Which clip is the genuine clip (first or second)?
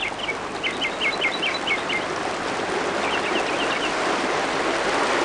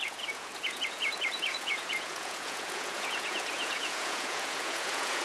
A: first